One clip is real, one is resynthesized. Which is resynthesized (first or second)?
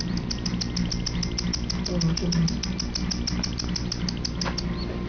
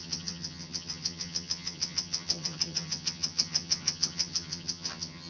second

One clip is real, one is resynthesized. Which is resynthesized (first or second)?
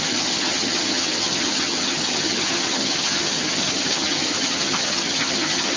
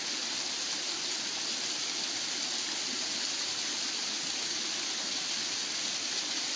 first